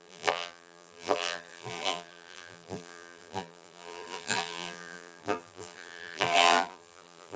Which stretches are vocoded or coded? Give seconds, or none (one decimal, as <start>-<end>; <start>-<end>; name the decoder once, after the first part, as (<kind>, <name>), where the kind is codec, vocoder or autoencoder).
0.0-7.4 (vocoder, BigVGAN v2)